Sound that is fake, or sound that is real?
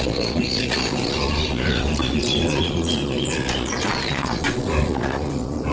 fake